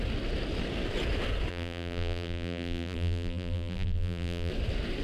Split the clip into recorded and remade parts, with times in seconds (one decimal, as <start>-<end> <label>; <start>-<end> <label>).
0.0-1.5 recorded; 1.5-4.5 remade; 4.5-5.0 recorded